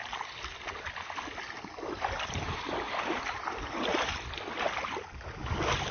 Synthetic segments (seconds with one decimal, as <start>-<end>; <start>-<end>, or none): none